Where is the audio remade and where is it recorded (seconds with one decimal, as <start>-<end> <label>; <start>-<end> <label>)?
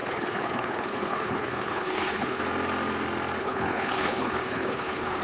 0.0-2.4 remade; 2.4-3.4 recorded; 3.4-5.2 remade